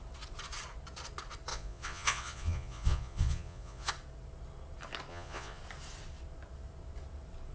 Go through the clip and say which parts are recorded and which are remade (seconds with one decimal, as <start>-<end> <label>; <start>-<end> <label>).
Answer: 0.0-1.5 recorded; 1.5-3.9 remade; 3.9-5.1 recorded; 5.1-5.6 remade; 5.6-7.5 recorded